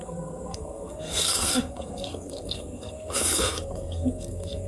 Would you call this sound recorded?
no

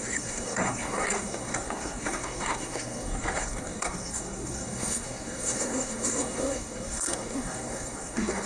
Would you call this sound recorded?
no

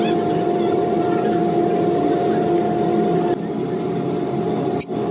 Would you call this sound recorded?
yes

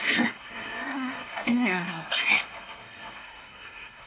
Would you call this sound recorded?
no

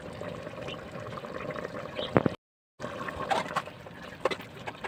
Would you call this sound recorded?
yes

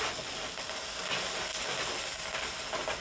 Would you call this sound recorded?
yes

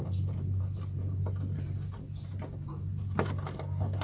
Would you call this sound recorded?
yes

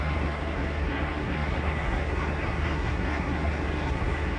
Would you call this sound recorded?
no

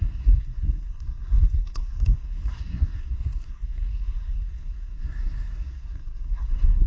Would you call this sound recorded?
no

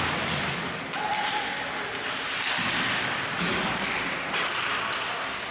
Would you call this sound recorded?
yes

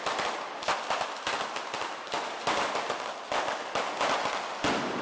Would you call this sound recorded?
yes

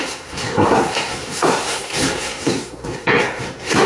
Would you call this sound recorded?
no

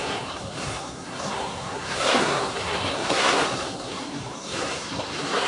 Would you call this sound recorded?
no